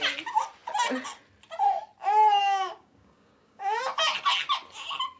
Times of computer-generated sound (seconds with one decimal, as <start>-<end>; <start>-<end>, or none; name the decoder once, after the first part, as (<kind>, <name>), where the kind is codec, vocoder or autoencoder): 2.4-3.8 (codec, DAC)